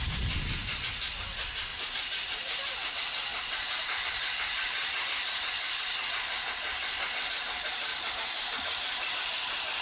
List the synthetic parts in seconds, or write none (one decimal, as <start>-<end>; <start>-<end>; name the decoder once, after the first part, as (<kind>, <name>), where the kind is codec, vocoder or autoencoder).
0.0-7.9 (vocoder, BigVGAN v2); 8.6-9.8